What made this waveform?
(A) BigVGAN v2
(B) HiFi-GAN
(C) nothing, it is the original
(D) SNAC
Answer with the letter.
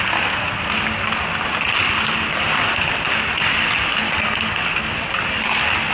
C